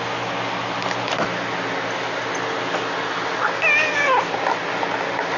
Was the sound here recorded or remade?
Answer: recorded